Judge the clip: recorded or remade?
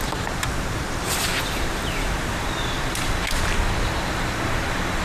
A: recorded